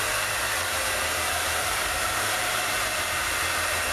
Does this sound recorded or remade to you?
remade